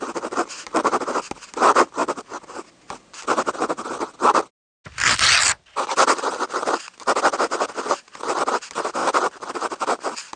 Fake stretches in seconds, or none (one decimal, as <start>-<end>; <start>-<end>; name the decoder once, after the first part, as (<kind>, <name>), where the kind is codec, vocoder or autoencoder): none